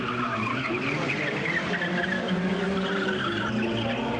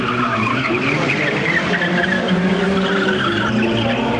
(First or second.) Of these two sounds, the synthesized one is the second